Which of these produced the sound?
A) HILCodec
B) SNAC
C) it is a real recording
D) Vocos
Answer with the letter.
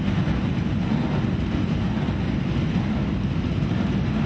C